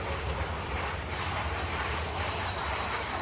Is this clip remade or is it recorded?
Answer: recorded